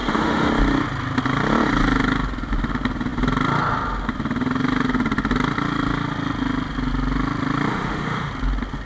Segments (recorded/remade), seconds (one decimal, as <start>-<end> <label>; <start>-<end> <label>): 0.0-0.5 remade; 0.5-7.7 recorded; 7.7-8.3 remade; 8.3-8.9 recorded